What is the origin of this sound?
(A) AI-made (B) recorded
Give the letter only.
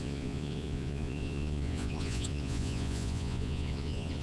A